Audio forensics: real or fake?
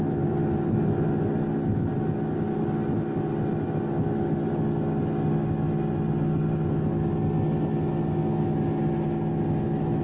real